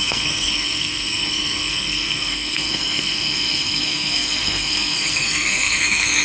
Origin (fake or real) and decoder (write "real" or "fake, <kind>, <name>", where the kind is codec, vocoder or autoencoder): fake, codec, SNAC